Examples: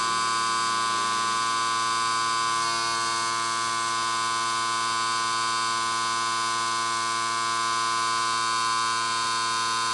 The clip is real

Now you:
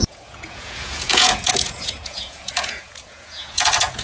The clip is fake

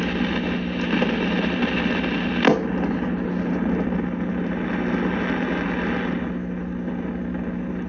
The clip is real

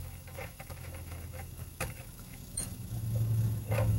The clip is fake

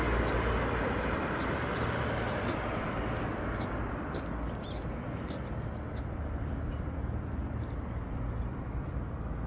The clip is real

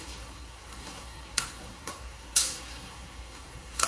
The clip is fake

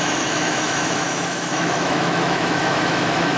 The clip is fake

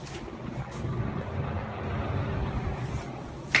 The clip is real